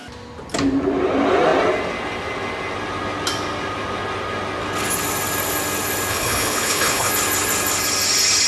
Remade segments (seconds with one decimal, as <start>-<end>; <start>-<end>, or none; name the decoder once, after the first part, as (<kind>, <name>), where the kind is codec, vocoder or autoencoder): 6.1-7.1 (codec, HILCodec)